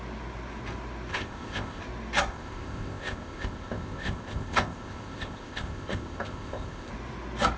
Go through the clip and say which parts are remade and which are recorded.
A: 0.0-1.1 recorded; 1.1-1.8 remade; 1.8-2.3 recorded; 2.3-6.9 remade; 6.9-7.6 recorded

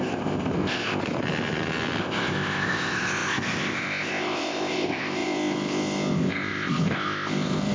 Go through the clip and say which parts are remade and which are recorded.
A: 0.0-1.0 remade; 1.0-2.0 recorded; 2.0-7.7 remade